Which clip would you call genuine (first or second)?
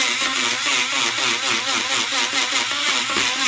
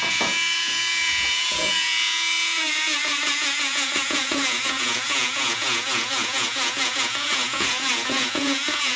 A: first